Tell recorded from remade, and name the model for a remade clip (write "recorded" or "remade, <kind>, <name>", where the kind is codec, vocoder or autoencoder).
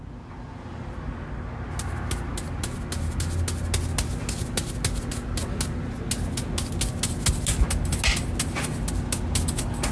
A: recorded